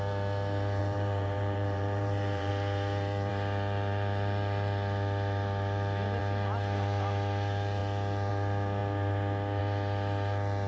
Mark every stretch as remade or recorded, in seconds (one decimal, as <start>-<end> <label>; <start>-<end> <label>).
0.0-0.8 recorded; 0.8-2.5 remade; 2.5-10.7 recorded